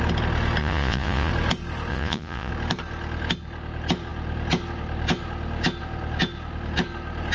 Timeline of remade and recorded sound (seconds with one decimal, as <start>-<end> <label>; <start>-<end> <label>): 0.0-0.6 recorded; 0.6-1.3 remade; 1.3-1.9 recorded; 1.9-2.5 remade; 2.5-7.3 recorded